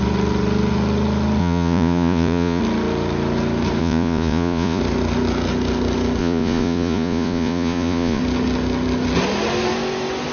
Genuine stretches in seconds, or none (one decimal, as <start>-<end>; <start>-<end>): 0.0-1.4; 2.6-3.8; 4.8-6.2; 8.2-10.3